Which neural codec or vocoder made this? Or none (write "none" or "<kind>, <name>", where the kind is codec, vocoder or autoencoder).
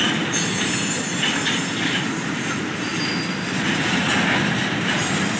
none